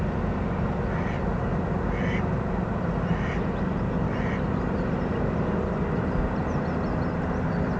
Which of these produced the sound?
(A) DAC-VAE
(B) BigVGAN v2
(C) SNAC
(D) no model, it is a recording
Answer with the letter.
D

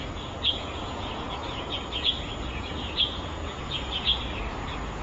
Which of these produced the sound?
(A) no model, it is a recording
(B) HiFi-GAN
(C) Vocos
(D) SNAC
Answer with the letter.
C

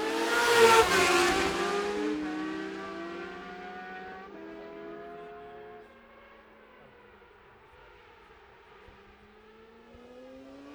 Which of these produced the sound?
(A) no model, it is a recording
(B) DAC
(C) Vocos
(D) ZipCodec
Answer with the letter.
A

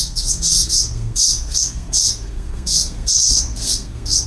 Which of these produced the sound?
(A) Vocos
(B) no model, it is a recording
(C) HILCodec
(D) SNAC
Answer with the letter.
D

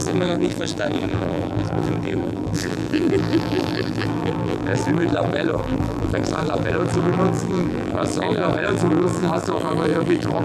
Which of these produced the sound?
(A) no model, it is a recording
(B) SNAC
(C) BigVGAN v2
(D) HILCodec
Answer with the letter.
C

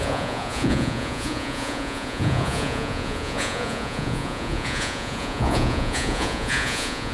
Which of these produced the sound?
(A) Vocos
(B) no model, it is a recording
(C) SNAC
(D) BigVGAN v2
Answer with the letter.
A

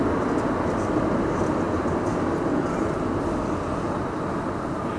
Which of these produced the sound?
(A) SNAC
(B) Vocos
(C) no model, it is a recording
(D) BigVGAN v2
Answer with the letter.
C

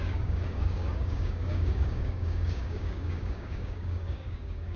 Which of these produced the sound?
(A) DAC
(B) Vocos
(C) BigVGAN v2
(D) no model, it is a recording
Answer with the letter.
A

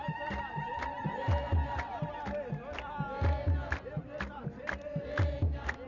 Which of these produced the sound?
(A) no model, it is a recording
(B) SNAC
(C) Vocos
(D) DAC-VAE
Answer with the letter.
A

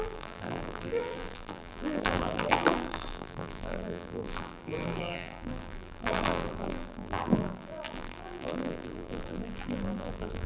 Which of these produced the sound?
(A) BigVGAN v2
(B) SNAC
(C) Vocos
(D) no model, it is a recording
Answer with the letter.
A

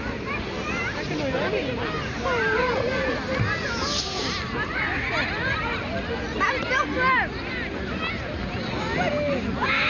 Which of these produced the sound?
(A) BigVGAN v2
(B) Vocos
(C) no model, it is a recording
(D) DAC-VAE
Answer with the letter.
C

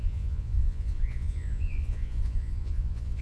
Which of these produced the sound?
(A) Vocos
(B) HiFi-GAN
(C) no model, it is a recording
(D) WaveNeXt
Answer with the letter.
A